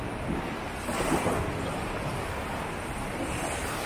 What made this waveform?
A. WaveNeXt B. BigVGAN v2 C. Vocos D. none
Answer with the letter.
D